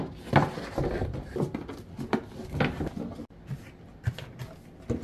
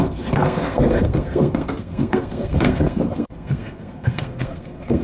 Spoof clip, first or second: second